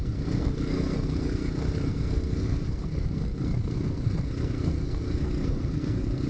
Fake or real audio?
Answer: fake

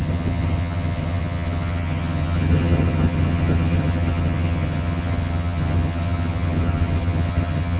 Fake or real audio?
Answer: fake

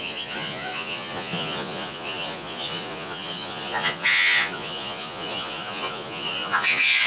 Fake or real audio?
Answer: fake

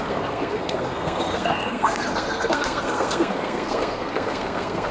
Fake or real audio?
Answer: fake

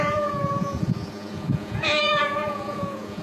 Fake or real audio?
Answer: fake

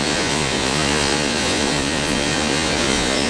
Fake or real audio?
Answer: fake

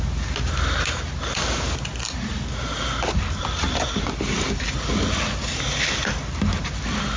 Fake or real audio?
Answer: real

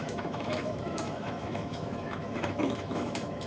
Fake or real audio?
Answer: fake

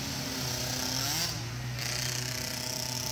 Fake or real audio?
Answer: real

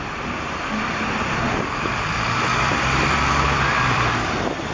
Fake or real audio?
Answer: fake